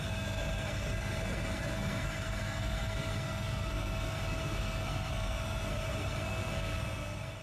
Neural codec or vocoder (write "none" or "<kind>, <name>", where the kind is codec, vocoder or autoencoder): codec, SNAC